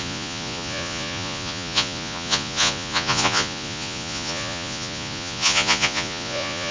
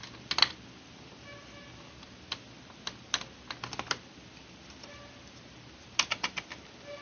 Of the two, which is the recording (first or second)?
second